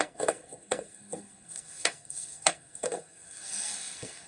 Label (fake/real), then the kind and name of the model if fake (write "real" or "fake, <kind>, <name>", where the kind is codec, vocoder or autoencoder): fake, codec, SNAC